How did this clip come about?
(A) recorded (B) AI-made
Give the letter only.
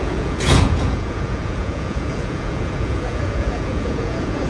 B